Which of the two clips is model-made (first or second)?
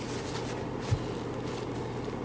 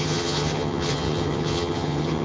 second